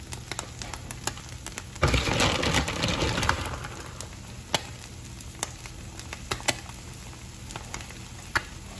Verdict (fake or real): real